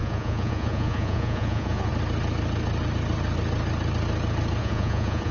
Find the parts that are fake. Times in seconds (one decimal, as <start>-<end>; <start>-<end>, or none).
0.0-1.9; 4.6-5.3